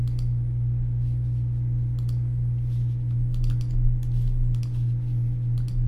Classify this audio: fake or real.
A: real